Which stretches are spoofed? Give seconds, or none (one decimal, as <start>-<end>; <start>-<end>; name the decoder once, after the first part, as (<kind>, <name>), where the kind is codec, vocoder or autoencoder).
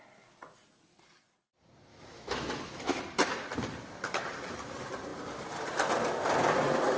1.9-3.0 (autoencoder, DAC-VAE)